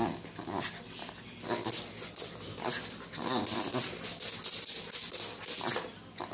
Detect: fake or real real